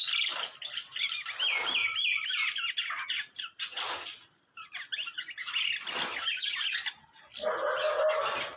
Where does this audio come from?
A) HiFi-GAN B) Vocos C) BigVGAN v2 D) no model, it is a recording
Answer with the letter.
D